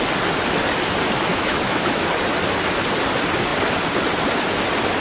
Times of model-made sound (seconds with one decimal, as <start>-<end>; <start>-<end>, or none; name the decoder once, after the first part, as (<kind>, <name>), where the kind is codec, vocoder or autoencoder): 1.3-2.1 (autoencoder, DAC-VAE)